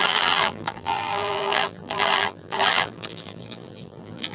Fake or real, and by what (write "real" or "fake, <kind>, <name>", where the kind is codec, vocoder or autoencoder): fake, vocoder, BigVGAN v2